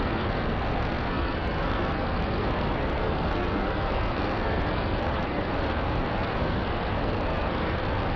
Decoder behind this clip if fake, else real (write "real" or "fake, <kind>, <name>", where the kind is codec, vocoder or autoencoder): fake, codec, SNAC